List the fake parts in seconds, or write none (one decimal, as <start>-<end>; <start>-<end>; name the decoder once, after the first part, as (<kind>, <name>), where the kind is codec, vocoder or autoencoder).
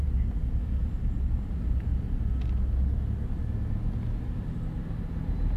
none